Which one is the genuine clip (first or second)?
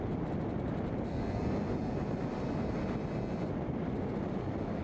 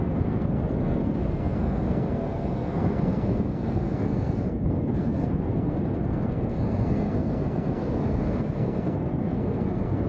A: first